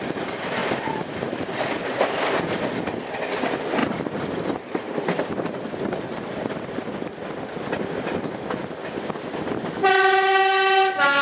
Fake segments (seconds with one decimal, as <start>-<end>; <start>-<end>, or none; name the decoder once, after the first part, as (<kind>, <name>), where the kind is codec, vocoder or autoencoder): 3.8-7.1 (vocoder, BigVGAN v2)